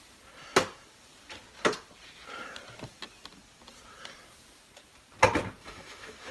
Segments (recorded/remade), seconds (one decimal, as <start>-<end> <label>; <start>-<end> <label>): 0.0-5.6 recorded; 5.6-6.3 remade